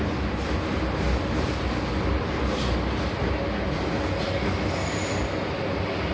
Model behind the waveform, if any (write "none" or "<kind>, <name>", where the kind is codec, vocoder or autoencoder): none